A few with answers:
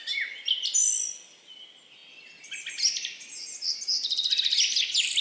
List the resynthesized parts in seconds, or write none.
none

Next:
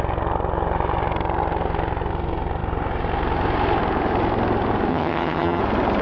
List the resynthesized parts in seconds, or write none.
4.9-5.6 (vocoder, HiFi-GAN)